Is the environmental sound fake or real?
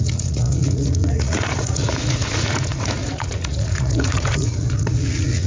fake